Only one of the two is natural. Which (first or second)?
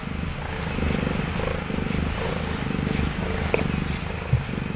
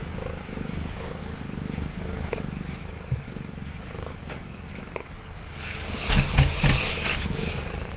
first